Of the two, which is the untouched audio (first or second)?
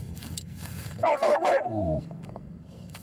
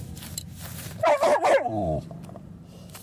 second